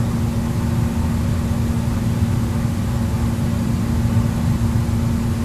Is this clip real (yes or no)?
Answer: yes